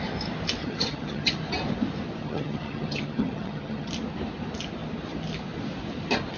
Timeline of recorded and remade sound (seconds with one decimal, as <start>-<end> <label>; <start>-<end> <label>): 0.0-0.6 recorded; 0.6-1.4 remade; 1.4-2.2 recorded; 2.2-3.9 remade; 3.9-6.4 recorded